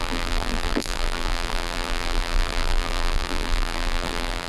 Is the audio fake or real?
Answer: fake